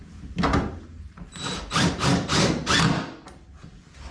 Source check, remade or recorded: recorded